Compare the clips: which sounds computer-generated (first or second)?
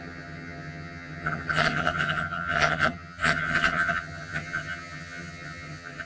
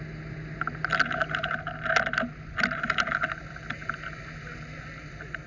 first